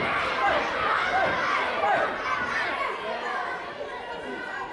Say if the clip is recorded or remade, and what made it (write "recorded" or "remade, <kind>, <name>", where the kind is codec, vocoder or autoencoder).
recorded